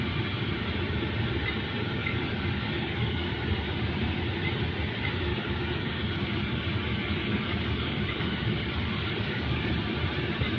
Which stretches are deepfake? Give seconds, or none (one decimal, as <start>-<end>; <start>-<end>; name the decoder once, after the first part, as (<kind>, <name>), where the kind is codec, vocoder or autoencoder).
2.0-3.3 (codec, DAC); 5.3-9.7